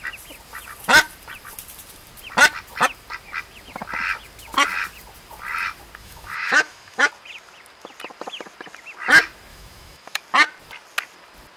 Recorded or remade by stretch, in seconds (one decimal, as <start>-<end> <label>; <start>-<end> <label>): 0.0-6.0 recorded; 6.0-7.1 remade; 7.1-9.5 recorded; 9.5-10.2 remade; 10.2-11.6 recorded